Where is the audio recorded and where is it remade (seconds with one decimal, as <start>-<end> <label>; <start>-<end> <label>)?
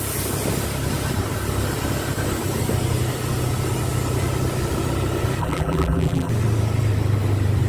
0.0-5.4 recorded; 5.4-6.3 remade; 6.3-7.7 recorded